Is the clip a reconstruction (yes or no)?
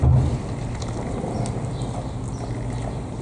no